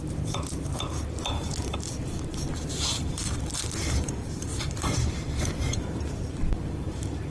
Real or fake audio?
fake